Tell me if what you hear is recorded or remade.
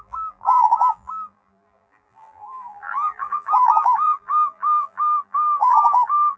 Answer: remade